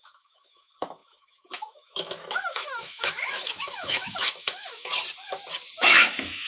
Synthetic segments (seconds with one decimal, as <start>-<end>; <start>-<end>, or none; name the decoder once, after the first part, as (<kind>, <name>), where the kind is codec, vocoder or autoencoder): 0.0-4.9 (autoencoder, DAC-VAE); 5.8-6.5